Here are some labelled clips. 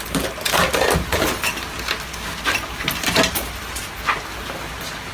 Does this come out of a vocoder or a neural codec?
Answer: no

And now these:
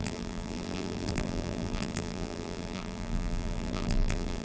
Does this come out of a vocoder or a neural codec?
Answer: yes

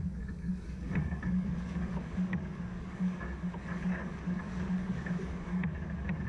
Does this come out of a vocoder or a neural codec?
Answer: yes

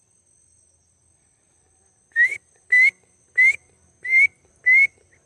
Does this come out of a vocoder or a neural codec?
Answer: no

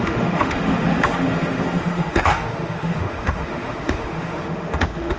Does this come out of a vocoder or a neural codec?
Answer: yes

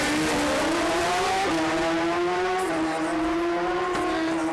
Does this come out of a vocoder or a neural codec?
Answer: no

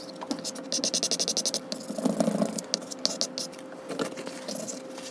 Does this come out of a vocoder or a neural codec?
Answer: no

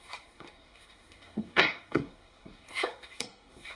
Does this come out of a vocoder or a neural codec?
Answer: yes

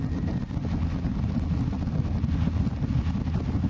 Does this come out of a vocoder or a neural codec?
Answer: no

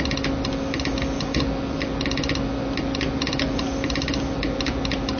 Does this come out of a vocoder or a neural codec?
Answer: no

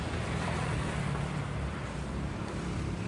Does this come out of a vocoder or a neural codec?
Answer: yes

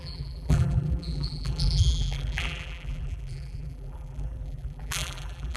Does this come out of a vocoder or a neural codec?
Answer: yes